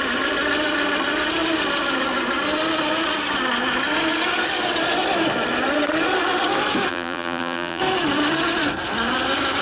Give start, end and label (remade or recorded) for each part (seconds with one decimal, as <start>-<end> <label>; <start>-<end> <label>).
0.0-6.9 recorded; 6.9-7.8 remade; 7.8-9.6 recorded